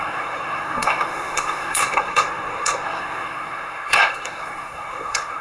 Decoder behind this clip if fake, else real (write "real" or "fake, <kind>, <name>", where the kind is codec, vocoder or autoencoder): fake, codec, SNAC